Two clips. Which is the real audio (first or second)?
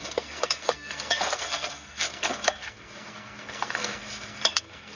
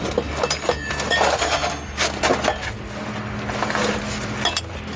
second